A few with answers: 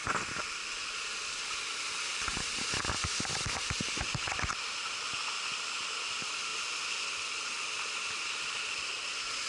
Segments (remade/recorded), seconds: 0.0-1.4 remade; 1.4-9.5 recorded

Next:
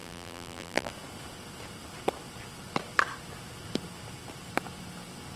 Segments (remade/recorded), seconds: 0.0-0.9 remade; 0.9-5.4 recorded

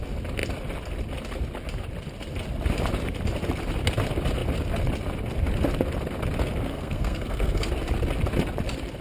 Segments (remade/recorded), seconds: 0.0-6.7 recorded; 6.7-7.7 remade; 7.7-9.0 recorded

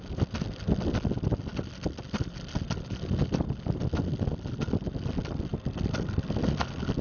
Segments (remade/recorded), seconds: 0.0-7.0 recorded

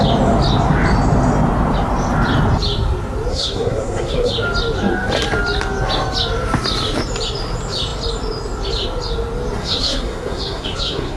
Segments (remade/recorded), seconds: 0.0-3.3 recorded; 3.3-4.3 remade; 4.3-9.6 recorded; 9.6-11.2 remade

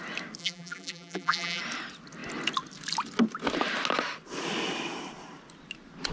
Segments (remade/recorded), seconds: 0.0-0.4 recorded; 0.4-1.6 remade; 1.6-6.1 recorded

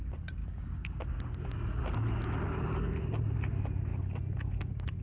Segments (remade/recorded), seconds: 0.0-0.4 recorded; 0.4-1.0 remade; 1.0-5.0 recorded